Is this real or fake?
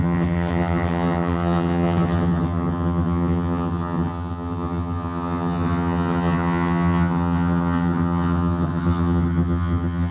fake